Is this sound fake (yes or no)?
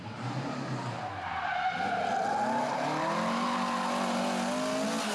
no